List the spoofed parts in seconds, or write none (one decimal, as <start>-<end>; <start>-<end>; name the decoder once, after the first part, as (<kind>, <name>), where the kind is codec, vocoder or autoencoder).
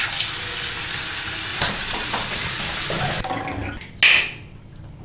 1.5-2.6 (vocoder, Vocos)